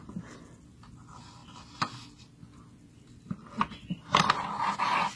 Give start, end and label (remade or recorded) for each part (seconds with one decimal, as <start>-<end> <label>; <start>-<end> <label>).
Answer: 0.0-5.2 recorded